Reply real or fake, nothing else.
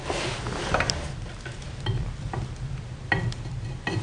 real